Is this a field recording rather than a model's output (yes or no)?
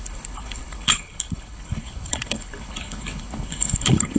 no